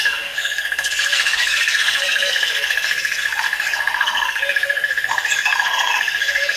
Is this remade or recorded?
remade